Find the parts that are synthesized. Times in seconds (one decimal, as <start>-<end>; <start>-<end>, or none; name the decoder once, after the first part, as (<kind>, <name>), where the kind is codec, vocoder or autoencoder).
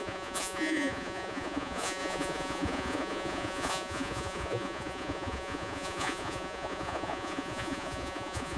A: 0.0-8.6 (vocoder, Vocos)